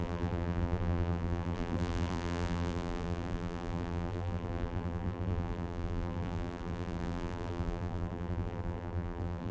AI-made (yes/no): yes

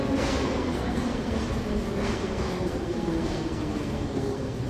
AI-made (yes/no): yes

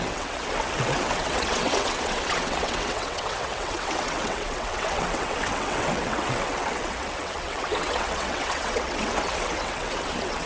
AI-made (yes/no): yes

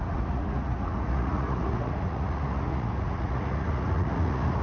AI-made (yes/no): yes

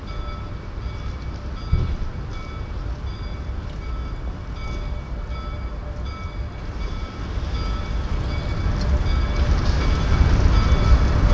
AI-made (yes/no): no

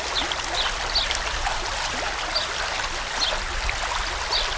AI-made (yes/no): no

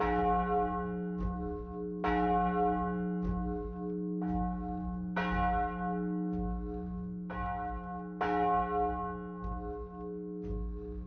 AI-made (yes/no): no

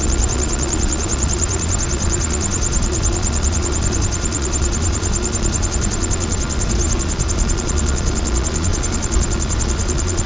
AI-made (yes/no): yes